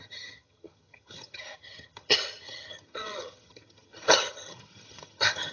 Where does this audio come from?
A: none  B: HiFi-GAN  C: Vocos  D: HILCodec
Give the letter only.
B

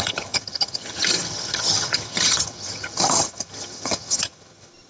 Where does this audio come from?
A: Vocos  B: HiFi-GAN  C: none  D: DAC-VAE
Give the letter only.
B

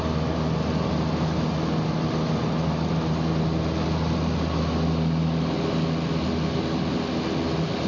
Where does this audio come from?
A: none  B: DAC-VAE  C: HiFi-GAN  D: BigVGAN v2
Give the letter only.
A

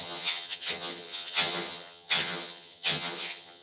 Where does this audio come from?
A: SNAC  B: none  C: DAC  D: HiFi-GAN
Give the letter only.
D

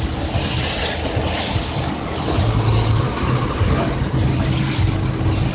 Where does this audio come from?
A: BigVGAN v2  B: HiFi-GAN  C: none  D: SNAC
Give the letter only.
C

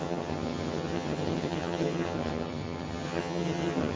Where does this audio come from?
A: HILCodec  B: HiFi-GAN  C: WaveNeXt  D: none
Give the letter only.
B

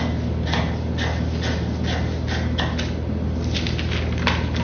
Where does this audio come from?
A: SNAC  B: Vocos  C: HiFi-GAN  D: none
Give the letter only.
D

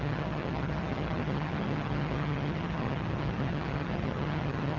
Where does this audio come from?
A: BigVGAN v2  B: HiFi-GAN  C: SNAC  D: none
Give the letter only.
B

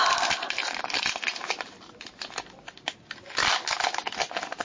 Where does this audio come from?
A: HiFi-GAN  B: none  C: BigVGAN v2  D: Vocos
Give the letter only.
B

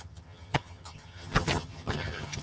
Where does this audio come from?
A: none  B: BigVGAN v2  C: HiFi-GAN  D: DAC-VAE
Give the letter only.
C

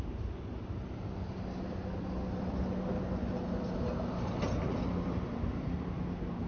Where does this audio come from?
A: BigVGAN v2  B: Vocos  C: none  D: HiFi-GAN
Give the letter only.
C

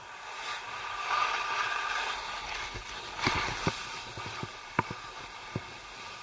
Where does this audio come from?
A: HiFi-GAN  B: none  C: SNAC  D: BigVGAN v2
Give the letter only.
B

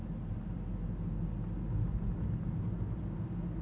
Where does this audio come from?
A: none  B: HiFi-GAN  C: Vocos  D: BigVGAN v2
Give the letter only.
A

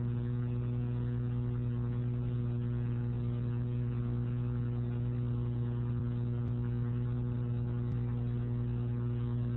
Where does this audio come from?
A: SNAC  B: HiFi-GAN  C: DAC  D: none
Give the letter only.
D